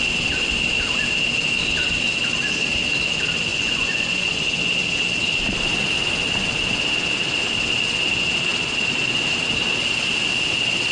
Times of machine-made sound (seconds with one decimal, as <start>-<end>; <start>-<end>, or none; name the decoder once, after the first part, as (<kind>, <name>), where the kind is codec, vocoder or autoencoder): 3.5-4.4 (vocoder, Vocos)